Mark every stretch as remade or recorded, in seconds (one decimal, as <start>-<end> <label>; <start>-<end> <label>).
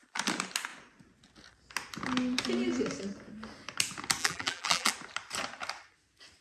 0.0-4.2 recorded; 4.2-4.9 remade; 4.9-6.4 recorded